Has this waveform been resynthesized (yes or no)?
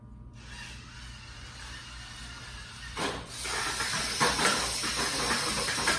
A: no